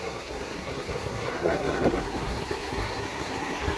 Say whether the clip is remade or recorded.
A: remade